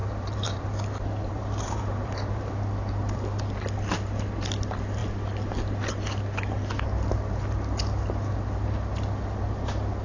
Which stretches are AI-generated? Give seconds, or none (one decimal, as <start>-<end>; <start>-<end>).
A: 0.0-2.5